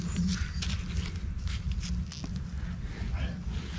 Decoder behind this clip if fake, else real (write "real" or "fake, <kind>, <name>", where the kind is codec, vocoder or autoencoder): real